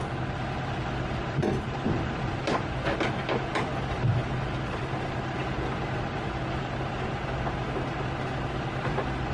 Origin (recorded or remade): recorded